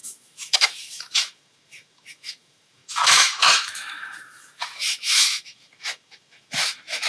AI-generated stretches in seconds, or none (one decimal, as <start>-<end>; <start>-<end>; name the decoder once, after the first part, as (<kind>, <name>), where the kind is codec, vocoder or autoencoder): 0.0-7.1 (autoencoder, DAC-VAE)